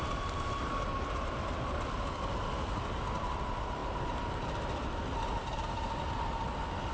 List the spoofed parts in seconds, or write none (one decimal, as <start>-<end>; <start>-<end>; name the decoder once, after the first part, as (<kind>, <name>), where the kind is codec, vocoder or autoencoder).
none